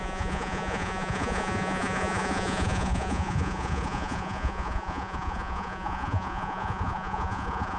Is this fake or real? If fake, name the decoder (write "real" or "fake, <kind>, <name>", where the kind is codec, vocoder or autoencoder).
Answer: fake, vocoder, Vocos